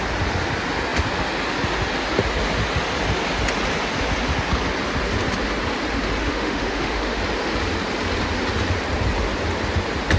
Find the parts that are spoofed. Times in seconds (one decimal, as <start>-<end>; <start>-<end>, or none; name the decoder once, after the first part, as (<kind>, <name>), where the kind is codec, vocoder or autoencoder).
6.2-7.2 (autoencoder, DAC-VAE)